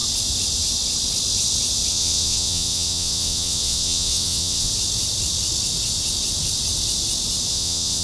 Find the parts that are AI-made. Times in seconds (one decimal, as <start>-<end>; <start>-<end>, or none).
1.9-4.7; 7.5-8.0

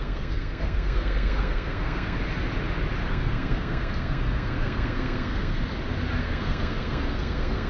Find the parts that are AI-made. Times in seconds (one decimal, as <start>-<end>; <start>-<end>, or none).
0.0-2.2; 3.1-5.6; 6.2-7.7

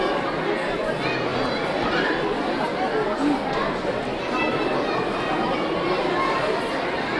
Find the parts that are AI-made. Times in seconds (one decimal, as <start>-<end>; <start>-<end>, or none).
none

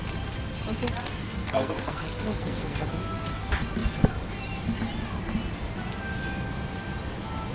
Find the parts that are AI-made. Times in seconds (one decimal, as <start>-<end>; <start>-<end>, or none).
1.2-3.0

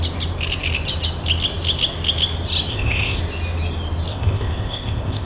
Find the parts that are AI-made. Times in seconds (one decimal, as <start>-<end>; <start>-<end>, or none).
2.7-3.2; 4.1-5.3

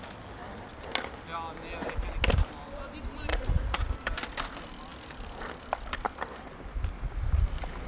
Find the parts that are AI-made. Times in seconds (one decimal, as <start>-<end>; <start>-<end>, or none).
3.3-3.8

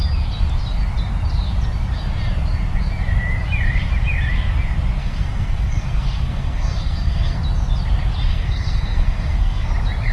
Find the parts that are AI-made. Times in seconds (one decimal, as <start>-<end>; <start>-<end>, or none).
5.0-7.4; 8.3-9.7